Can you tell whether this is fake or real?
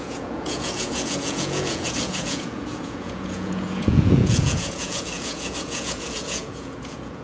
fake